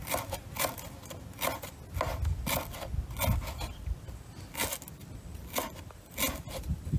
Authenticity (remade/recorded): recorded